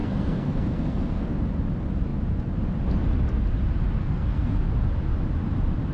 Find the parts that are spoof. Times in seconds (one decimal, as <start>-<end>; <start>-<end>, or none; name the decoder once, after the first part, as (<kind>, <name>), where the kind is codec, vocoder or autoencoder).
0.0-1.4 (codec, SNAC); 4.0-4.7